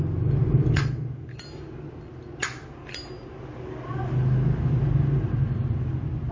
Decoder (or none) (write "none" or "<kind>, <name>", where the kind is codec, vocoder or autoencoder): none